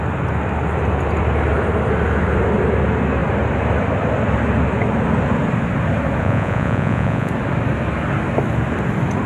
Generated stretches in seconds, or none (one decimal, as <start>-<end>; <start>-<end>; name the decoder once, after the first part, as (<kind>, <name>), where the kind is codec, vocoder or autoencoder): 6.2-7.3 (vocoder, Vocos)